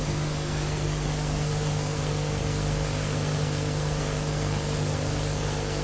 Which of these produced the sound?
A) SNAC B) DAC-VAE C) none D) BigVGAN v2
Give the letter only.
A